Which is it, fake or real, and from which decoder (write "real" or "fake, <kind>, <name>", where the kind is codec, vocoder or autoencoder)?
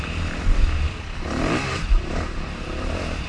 real